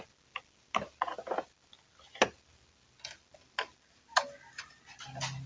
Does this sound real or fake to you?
real